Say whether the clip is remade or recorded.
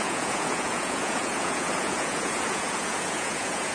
remade